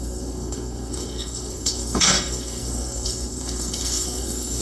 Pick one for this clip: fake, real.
fake